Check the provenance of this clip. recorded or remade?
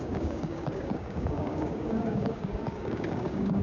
remade